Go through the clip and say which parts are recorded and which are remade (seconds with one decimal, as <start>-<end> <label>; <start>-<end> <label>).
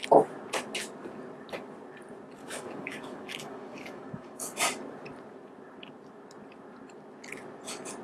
0.0-2.4 recorded; 2.4-4.6 remade; 4.6-8.0 recorded